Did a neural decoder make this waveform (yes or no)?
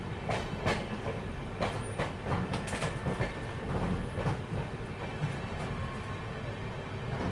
no